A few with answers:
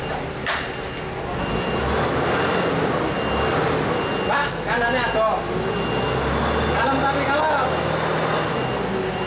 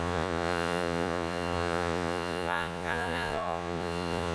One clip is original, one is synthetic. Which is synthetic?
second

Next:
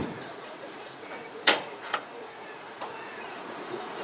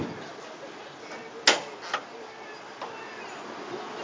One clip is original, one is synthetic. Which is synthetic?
first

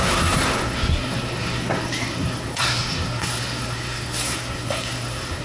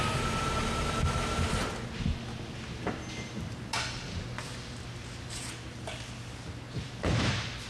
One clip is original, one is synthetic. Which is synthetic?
first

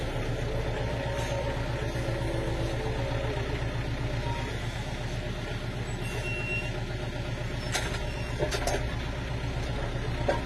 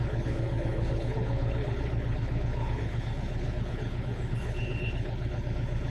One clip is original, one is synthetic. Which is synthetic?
second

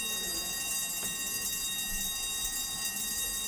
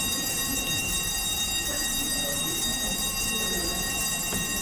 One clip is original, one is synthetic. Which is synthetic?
second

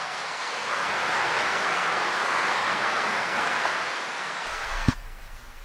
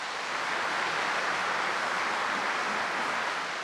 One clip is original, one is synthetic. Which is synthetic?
first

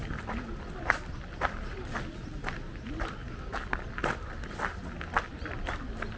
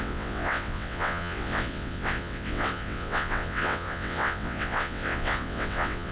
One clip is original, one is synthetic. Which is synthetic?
second